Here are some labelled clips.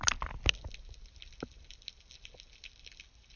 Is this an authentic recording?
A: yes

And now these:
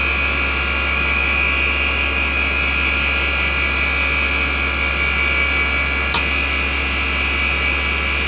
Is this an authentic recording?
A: yes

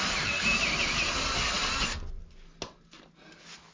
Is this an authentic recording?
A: yes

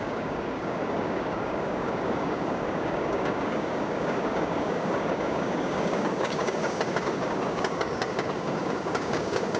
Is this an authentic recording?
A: no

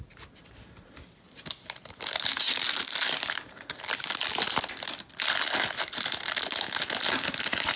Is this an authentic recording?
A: yes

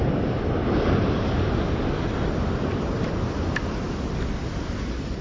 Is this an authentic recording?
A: yes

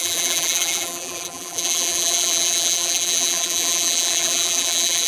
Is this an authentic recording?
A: no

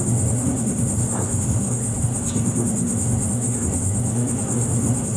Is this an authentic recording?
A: no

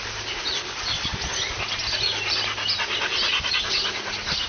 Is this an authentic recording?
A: yes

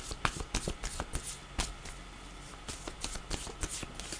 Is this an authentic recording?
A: yes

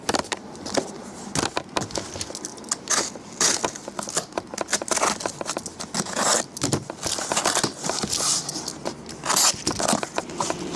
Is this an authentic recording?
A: yes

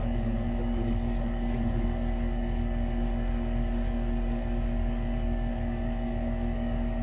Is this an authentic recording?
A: no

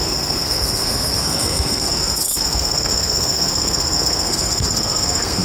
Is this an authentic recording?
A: no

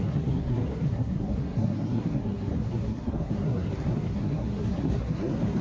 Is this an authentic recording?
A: no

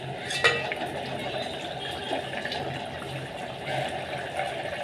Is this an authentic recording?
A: yes